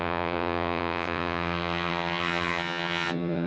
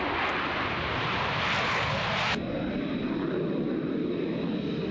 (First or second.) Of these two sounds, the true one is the second